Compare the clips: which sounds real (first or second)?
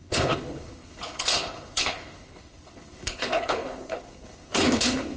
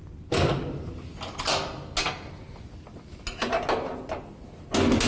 second